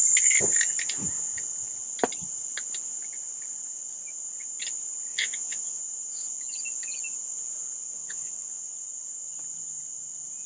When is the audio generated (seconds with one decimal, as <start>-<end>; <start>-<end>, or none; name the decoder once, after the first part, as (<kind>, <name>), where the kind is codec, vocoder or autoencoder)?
5.1-5.8 (vocoder, Vocos); 7.9-8.6